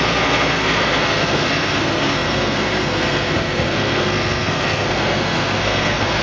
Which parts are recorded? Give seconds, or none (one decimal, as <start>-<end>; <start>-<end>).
none